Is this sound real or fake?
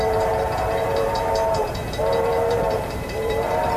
fake